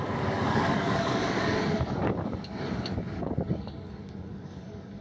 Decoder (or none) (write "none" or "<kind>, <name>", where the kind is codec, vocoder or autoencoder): codec, DAC